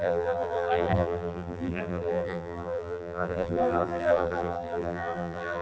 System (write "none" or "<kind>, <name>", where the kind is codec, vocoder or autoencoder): vocoder, BigVGAN v2